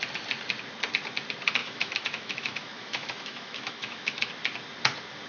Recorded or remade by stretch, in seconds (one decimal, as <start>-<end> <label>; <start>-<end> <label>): 0.0-1.6 recorded; 1.6-4.3 remade; 4.3-5.3 recorded